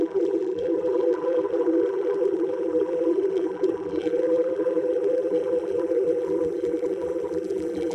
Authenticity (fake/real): fake